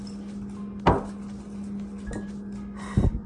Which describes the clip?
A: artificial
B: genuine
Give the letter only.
B